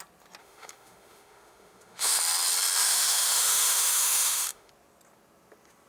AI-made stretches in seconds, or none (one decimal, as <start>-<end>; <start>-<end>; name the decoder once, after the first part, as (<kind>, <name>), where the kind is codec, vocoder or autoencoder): 0.4-2.2 (autoencoder, DAC-VAE); 2.8-4.7